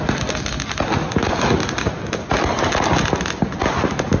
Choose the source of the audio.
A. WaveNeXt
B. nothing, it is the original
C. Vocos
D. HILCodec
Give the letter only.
B